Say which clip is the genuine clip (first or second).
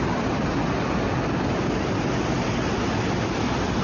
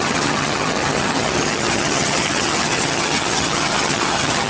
first